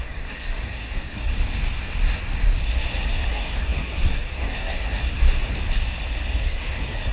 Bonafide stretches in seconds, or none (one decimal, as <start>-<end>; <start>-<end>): 1.3-3.3; 5.2-6.4